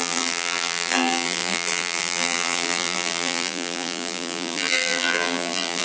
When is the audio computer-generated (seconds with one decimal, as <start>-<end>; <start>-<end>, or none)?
0.0-5.8